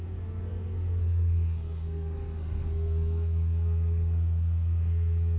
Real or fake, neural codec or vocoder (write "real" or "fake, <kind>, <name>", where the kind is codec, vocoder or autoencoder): fake, codec, SNAC